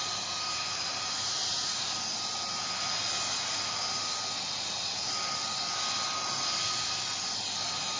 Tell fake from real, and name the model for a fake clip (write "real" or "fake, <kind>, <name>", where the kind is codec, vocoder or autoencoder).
real